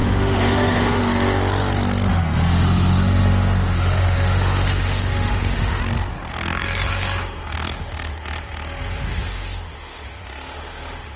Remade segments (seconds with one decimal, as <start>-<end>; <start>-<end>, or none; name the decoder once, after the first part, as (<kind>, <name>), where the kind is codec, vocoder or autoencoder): 0.0-1.0 (autoencoder, DAC-VAE); 2.1-5.8; 6.3-11.2